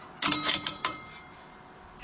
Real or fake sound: real